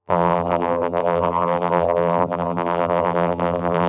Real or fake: fake